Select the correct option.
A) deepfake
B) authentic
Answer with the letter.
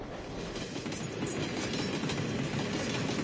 B